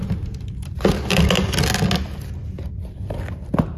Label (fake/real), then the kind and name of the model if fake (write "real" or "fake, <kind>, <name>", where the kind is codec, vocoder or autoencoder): real